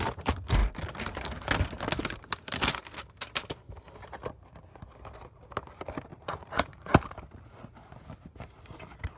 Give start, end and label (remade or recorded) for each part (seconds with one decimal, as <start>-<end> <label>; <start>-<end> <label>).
0.0-6.1 recorded; 6.1-6.9 remade; 6.9-9.2 recorded

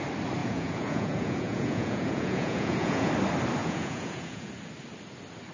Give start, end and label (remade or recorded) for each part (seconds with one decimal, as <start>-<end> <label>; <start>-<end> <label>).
0.0-0.4 recorded; 0.4-3.1 remade; 3.1-3.6 recorded; 3.6-4.5 remade; 4.5-5.5 recorded

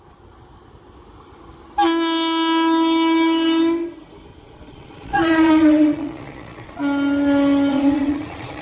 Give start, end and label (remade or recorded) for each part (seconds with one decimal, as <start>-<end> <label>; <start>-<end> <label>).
0.0-4.3 recorded; 4.3-6.8 remade; 6.8-7.7 recorded; 7.7-8.6 remade

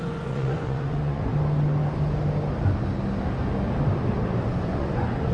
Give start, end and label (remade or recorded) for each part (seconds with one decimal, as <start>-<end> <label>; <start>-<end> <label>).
0.0-1.3 remade; 1.3-4.4 recorded; 4.4-5.3 remade

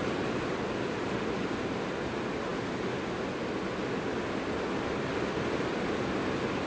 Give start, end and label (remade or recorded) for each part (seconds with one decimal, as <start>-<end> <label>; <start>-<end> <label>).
0.0-6.7 recorded

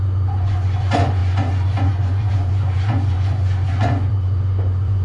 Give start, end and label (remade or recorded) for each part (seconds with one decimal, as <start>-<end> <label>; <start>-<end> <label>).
0.0-5.0 remade